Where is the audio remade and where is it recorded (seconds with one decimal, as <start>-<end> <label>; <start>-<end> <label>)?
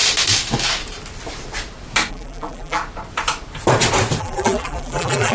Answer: 0.0-2.1 recorded; 2.1-2.8 remade; 2.8-4.2 recorded; 4.2-5.3 remade